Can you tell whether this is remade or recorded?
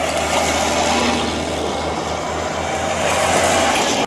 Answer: recorded